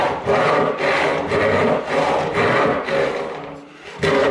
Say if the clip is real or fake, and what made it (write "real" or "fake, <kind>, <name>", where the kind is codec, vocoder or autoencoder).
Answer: real